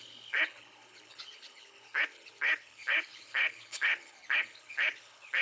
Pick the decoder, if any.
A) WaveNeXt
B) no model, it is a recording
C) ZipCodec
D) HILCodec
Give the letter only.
D